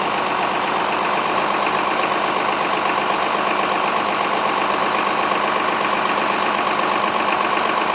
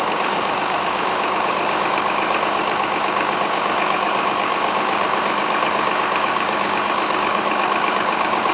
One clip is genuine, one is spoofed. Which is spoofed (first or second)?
second